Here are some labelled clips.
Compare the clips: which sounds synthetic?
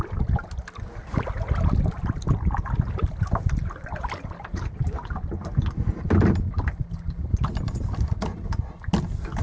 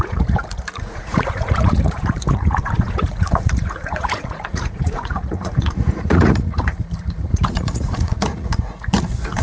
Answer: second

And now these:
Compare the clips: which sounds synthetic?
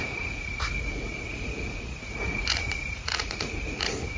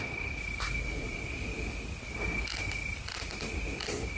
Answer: first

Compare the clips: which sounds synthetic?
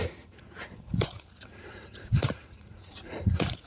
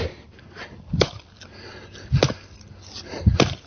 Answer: first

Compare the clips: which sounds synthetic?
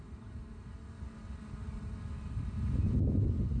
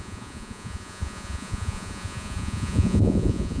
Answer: second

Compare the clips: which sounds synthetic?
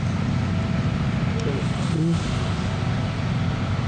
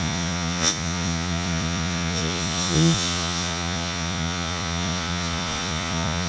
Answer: second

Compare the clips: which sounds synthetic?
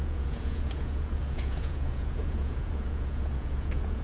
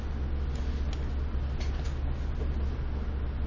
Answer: first